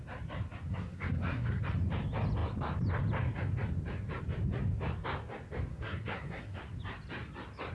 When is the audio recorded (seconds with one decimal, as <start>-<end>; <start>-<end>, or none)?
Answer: 0.0-0.7; 1.6-5.7; 6.6-7.7